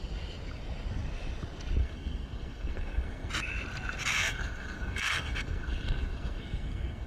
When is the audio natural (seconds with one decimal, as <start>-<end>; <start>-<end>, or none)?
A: 0.0-1.8; 3.3-4.2